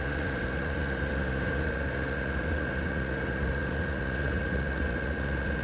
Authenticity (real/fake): fake